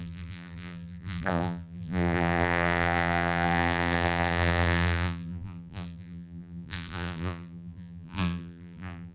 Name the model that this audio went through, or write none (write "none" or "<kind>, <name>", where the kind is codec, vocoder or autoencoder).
vocoder, BigVGAN v2